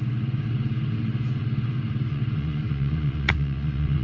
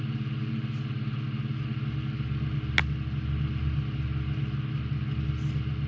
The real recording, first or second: second